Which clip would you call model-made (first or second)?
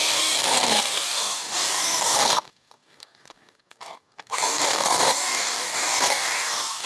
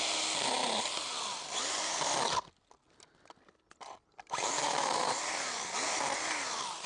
first